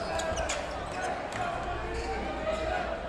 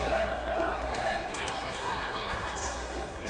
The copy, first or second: second